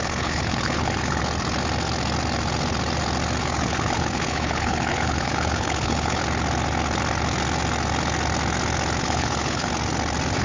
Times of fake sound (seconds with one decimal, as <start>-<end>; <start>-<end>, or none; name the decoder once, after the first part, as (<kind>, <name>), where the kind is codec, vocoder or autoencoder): 0.0-1.2 (codec, HILCodec); 3.4-6.2; 9.0-9.7